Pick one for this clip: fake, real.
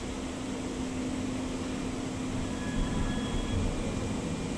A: real